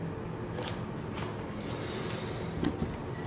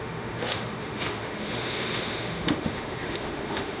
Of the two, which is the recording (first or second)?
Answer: first